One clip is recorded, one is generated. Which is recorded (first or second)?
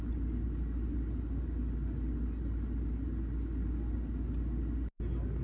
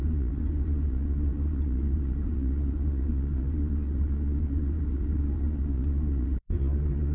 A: first